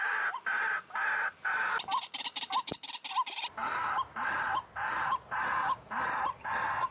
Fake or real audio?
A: real